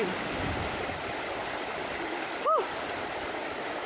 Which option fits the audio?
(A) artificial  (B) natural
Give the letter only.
B